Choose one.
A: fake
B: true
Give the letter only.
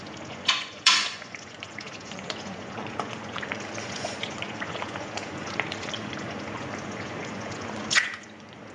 A